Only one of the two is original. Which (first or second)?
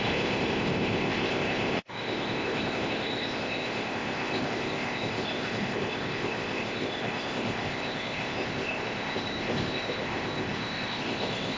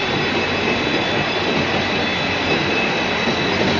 second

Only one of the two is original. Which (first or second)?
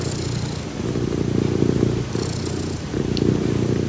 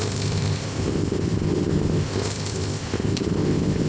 first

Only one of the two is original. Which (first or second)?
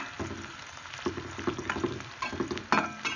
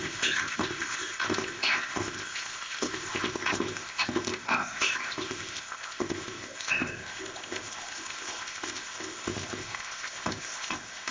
first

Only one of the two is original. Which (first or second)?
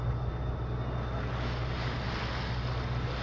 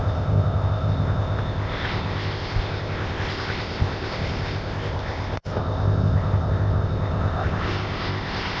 first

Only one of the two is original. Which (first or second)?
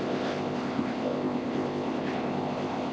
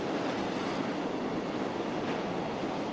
second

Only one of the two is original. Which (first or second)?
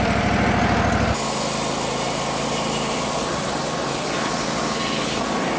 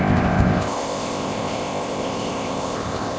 first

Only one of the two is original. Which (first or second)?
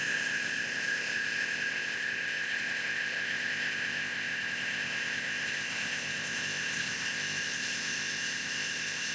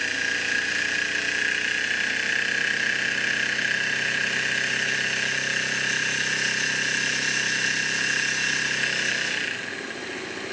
second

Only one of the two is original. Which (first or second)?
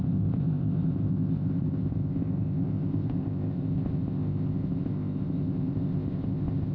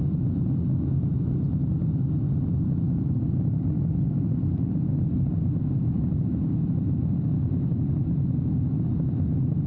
second